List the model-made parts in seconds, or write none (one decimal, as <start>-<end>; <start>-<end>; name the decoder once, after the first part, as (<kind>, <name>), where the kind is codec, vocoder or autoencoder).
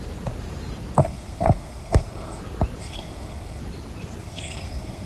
1.0-2.4 (codec, SNAC); 2.8-3.6; 4.2-5.1